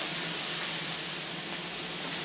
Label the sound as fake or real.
real